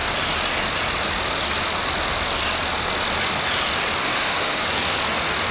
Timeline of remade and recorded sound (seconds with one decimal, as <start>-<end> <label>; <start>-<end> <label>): 0.0-4.0 recorded; 4.0-4.6 remade; 4.6-5.5 recorded